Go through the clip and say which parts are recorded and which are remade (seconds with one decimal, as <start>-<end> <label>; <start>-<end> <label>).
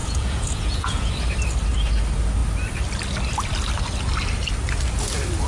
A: 0.0-1.1 remade; 1.1-5.5 recorded